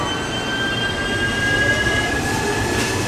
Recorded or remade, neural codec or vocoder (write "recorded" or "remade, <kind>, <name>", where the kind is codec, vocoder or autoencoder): recorded